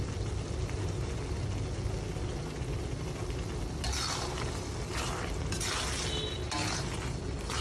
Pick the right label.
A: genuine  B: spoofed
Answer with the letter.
A